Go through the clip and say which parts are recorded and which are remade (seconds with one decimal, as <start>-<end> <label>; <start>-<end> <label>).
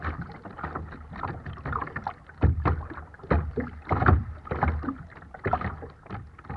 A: 0.0-6.6 recorded